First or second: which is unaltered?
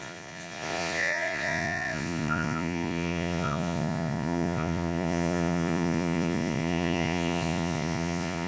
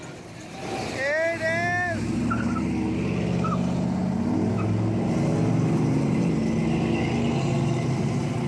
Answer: second